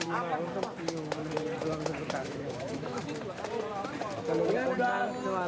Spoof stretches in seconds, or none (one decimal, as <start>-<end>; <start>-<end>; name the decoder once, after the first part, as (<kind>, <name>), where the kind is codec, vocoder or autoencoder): 2.2-3.0 (autoencoder, DAC-VAE)